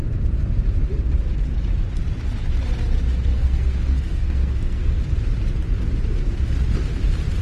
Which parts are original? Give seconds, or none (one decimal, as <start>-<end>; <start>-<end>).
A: 0.0-3.3; 5.0-7.4